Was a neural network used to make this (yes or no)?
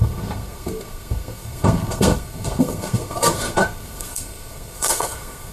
yes